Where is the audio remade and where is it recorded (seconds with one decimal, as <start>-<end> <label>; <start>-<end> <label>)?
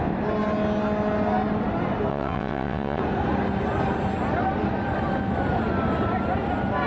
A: 0.0-2.1 recorded; 2.1-3.0 remade; 3.0-6.9 recorded